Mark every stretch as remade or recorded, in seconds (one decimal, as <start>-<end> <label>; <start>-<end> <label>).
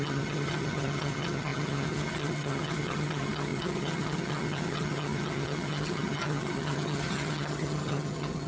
0.0-8.5 remade